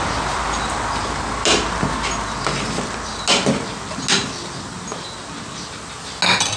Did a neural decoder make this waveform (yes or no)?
no